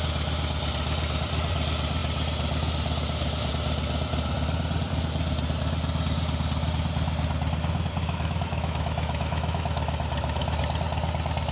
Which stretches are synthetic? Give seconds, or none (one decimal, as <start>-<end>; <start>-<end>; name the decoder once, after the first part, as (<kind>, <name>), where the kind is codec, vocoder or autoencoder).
8.0-10.6 (autoencoder, DAC-VAE)